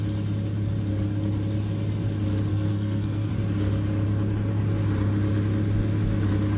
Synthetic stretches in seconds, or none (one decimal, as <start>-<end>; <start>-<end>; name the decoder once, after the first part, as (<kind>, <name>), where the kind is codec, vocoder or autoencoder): 2.5-3.3 (codec, SNAC)